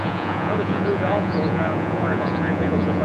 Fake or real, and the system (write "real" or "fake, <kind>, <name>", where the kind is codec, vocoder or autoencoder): fake, vocoder, Vocos